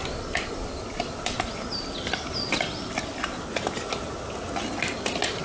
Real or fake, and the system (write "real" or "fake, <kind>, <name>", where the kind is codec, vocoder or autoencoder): real